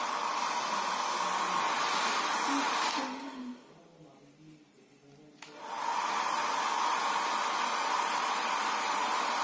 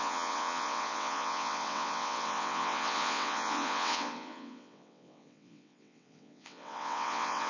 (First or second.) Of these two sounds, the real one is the first